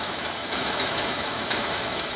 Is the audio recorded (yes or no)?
no